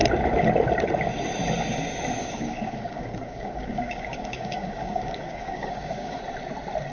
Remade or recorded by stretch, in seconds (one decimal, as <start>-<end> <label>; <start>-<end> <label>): 0.0-2.2 recorded; 2.2-6.2 remade; 6.2-6.9 recorded